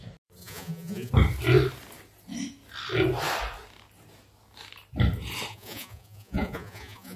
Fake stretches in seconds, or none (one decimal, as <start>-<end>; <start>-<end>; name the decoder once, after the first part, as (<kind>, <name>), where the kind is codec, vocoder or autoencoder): 0.4-1.1 (vocoder, Vocos); 5.5-7.2